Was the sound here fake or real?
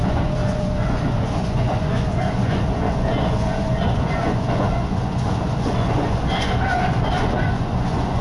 fake